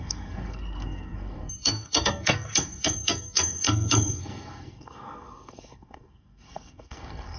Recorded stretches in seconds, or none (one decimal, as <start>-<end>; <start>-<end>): none